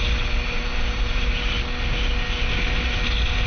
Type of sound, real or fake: real